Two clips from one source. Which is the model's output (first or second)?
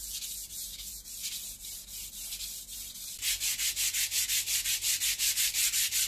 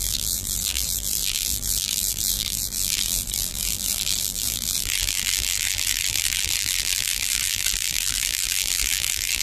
second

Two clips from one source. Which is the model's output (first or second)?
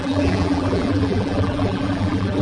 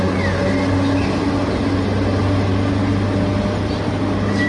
first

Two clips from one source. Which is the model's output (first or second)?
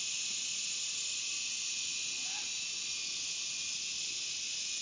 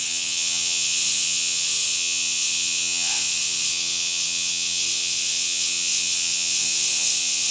second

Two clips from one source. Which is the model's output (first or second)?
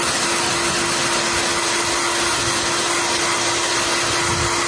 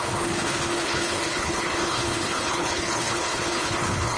second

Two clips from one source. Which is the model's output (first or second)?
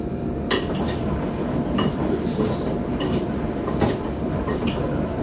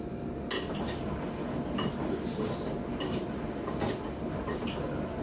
first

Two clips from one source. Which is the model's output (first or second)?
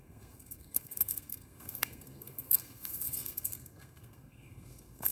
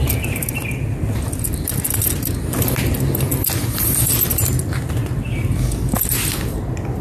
first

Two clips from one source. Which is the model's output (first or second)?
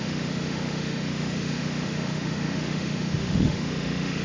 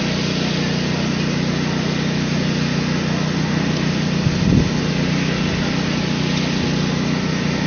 first